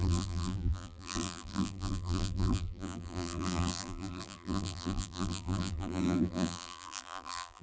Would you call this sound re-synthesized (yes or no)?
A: yes